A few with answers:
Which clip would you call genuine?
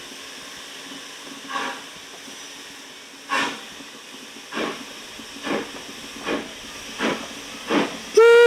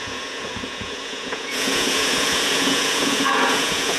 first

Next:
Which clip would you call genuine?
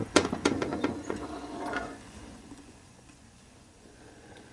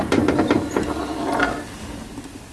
second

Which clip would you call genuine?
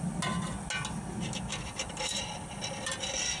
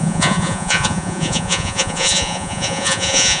first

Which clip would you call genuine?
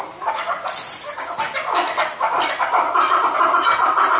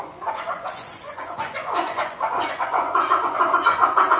first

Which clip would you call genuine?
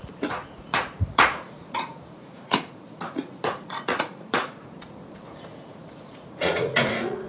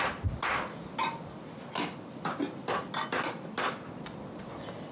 second